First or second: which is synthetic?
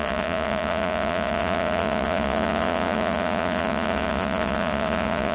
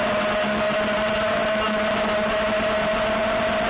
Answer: first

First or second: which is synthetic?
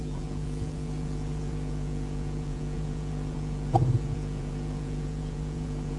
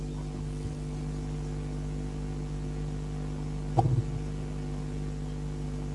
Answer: first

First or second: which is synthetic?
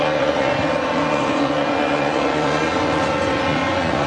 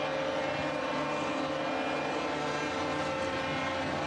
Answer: first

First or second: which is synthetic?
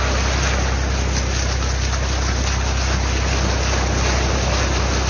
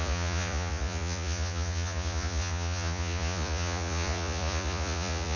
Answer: second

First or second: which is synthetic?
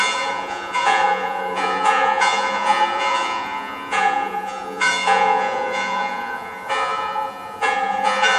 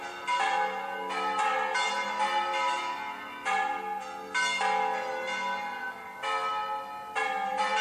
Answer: first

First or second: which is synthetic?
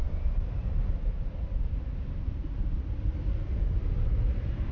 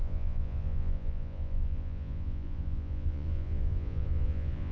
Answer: second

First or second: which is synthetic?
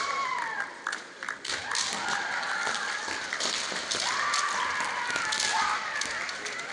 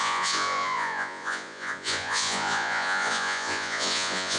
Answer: second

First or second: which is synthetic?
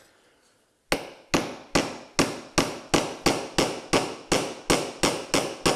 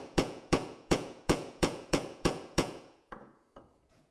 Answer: second